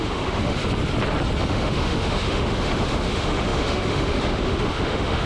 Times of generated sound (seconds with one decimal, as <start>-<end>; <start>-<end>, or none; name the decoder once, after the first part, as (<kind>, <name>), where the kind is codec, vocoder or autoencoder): 0.0-0.6 (autoencoder, DAC-VAE); 1.5-5.3